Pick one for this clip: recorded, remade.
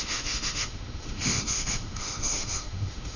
remade